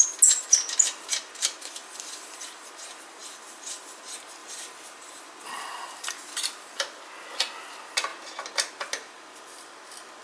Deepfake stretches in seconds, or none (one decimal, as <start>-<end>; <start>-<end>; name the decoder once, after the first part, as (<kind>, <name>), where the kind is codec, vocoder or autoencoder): 1.8-2.7 (vocoder, BigVGAN v2); 3.2-4.0; 4.4-7.0